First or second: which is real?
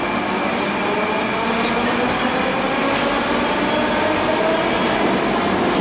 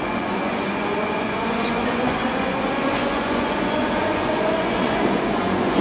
first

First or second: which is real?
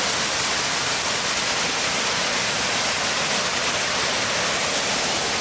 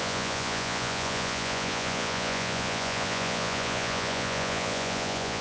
first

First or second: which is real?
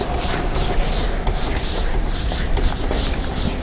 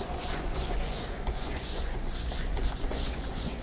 first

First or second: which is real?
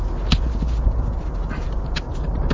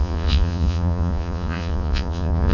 first